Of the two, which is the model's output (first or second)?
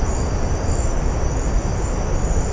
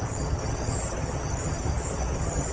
second